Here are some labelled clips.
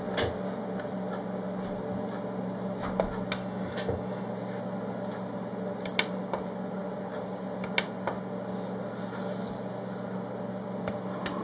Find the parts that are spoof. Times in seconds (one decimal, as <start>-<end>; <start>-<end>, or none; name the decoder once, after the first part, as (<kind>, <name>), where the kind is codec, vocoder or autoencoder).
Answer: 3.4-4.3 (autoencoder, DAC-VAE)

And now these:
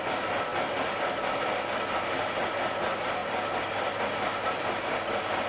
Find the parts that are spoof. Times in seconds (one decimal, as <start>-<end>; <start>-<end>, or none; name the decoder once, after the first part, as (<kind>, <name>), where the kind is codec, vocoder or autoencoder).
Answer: none

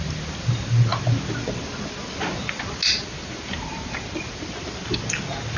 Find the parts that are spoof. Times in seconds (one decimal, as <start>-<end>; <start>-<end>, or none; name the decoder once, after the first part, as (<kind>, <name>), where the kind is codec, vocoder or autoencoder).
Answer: none

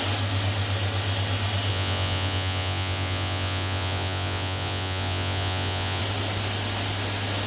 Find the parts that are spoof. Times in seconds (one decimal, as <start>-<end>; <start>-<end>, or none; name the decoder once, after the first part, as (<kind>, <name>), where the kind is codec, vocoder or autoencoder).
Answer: 1.7-6.0 (vocoder, Vocos)